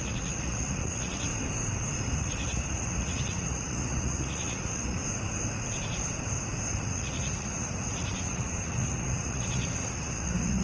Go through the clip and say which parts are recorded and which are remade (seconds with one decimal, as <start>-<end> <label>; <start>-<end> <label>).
0.0-1.3 remade; 1.3-2.2 recorded; 2.2-5.0 remade; 5.0-6.8 recorded; 6.8-10.6 remade